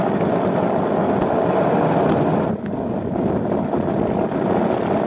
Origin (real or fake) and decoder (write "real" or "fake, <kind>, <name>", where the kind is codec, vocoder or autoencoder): real